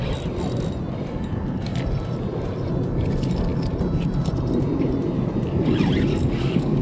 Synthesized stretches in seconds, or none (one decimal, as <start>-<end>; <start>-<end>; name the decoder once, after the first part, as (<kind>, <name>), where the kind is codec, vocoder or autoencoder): 6.1-6.8 (codec, DAC)